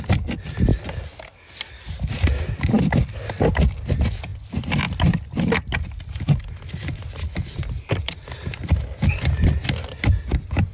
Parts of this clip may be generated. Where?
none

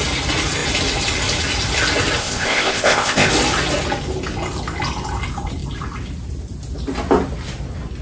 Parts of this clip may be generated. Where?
2.2-3.3 (codec, ZipCodec)

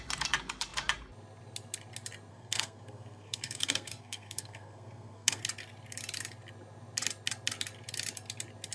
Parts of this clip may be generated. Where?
2.3-5.4 (codec, SNAC)

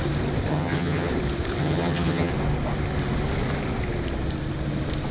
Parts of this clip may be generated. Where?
0.5-1.1 (vocoder, HiFi-GAN); 1.6-2.3

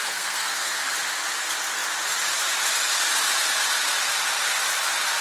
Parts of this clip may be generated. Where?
0.0-0.9 (codec, SNAC)

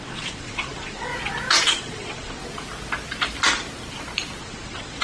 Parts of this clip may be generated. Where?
0.0-1.1 (vocoder, WaveNeXt); 1.7-2.4; 4.4-5.0